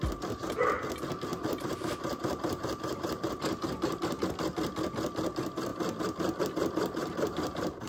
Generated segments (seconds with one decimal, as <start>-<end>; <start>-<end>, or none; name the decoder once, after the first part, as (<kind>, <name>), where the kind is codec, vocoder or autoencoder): 1.3-4.3 (vocoder, BigVGAN v2); 7.0-7.9